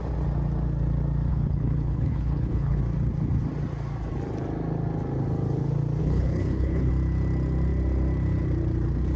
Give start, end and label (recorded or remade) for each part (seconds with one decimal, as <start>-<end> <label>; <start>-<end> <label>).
0.0-1.3 recorded; 1.3-2.8 remade; 2.8-6.0 recorded; 6.0-6.9 remade; 6.9-9.2 recorded